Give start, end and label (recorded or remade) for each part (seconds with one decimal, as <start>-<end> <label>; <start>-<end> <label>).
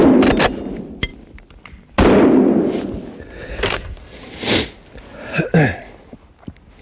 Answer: 0.0-3.5 recorded; 3.5-4.2 remade; 4.2-6.8 recorded